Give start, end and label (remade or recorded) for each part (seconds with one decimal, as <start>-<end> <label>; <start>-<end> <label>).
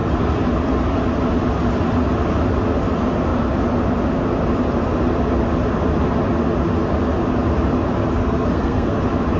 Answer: 0.0-8.2 recorded; 8.2-9.0 remade; 9.0-9.4 recorded